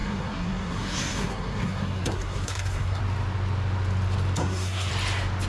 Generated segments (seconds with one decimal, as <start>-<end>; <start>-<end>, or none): 0.0-3.0; 4.4-4.9